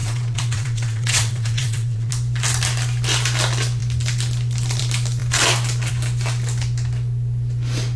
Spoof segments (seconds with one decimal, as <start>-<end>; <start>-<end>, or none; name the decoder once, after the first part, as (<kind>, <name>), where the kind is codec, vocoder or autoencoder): 0.0-2.1 (vocoder, WaveNeXt)